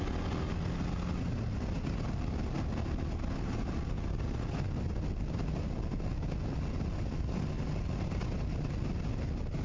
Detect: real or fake real